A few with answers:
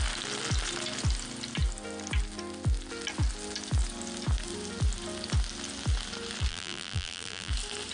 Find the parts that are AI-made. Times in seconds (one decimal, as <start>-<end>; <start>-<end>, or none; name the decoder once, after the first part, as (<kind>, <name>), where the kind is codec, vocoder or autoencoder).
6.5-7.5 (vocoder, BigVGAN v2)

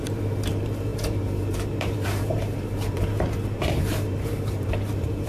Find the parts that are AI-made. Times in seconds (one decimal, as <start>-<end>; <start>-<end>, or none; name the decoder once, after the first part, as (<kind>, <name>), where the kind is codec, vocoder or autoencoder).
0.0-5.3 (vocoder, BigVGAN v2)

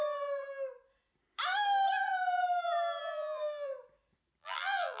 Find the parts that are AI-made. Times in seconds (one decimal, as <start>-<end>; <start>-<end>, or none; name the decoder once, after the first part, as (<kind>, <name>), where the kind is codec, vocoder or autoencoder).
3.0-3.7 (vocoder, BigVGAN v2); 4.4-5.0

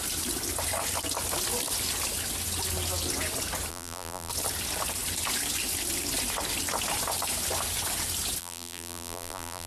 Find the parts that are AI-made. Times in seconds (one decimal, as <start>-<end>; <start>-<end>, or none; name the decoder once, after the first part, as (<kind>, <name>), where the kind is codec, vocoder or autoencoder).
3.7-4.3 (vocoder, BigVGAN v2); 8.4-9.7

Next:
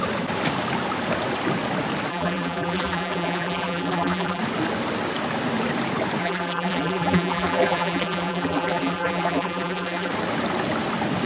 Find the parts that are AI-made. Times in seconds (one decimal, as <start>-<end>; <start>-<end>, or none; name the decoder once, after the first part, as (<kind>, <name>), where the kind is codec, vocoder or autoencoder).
2.1-4.4 (vocoder, BigVGAN v2); 6.2-10.1

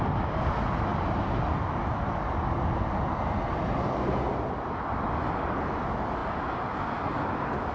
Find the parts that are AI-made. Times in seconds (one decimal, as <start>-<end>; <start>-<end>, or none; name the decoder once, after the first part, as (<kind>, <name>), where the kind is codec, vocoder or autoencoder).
none